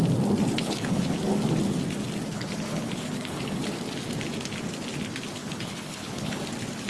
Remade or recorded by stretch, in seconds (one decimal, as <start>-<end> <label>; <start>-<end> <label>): 0.0-0.6 recorded; 0.6-1.2 remade; 1.2-2.3 recorded; 2.3-3.6 remade; 3.6-5.4 recorded; 5.4-6.4 remade; 6.4-6.9 recorded